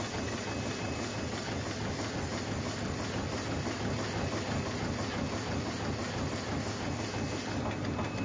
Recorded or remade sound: recorded